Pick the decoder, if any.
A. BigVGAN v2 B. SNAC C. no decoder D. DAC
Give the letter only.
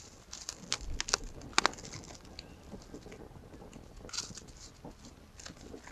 C